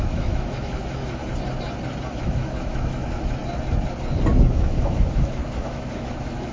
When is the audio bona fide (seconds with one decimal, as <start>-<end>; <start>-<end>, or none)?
1.2-2.1; 3.4-4.3